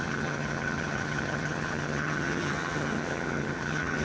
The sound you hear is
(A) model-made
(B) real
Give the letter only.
A